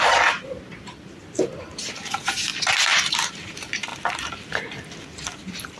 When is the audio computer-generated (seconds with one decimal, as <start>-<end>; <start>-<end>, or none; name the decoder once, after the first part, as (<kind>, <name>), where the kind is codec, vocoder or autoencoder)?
0.0-1.2 (vocoder, BigVGAN v2); 1.8-3.9; 5.0-5.8